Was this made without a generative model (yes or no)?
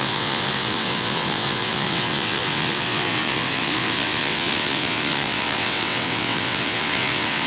no